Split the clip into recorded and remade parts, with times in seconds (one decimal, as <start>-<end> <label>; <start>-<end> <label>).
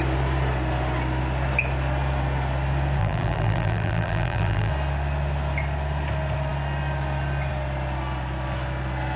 0.0-3.0 recorded; 3.0-4.7 remade; 4.7-9.2 recorded